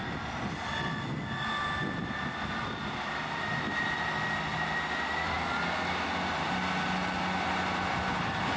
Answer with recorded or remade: recorded